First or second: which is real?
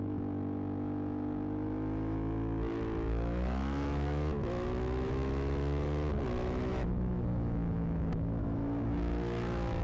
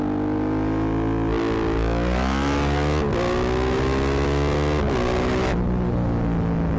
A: second